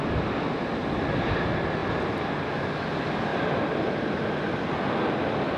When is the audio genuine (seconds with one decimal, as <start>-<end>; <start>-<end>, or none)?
0.0-5.6